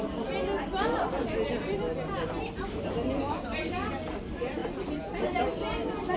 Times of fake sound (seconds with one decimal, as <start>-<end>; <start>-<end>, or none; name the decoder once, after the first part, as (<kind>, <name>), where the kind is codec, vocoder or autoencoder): none